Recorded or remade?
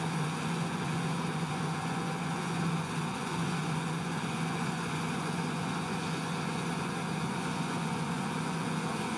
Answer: remade